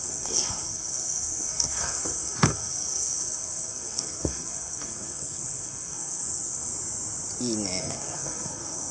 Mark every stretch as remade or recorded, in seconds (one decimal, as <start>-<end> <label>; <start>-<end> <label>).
0.0-6.7 remade; 6.7-7.8 recorded; 7.8-8.9 remade